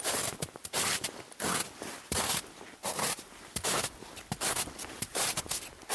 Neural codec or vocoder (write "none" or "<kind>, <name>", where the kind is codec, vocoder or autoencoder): none